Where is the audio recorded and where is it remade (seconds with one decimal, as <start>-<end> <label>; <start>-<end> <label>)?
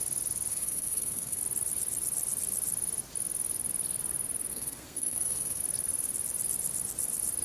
0.0-0.5 recorded; 0.5-1.4 remade; 1.4-4.5 recorded; 4.5-5.6 remade; 5.6-7.4 recorded